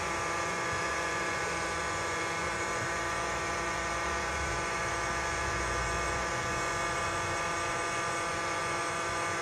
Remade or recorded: remade